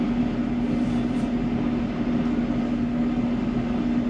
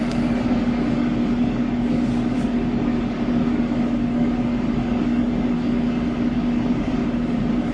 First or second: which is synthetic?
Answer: second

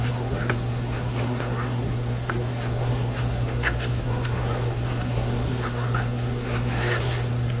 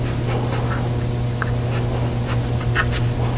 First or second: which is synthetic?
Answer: first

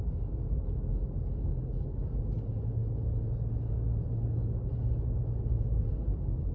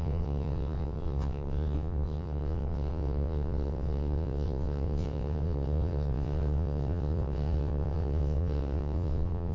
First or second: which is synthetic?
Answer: second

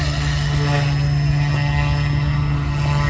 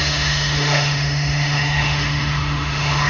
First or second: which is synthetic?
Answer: second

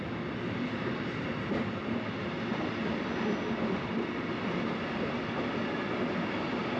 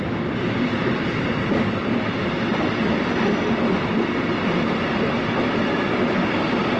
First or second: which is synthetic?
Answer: second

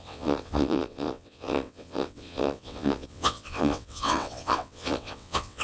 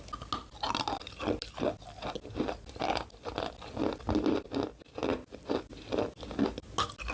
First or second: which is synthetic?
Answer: first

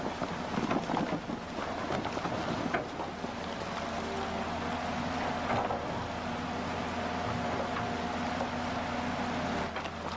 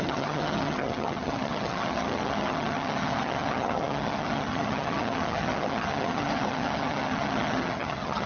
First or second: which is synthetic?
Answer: second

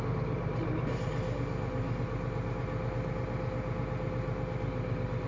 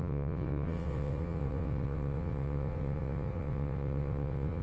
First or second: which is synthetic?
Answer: second